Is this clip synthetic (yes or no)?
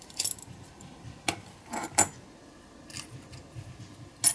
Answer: no